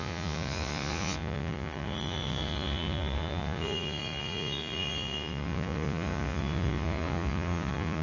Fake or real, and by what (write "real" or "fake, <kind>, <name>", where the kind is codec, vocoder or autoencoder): fake, vocoder, Vocos